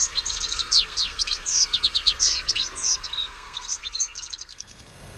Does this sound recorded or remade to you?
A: remade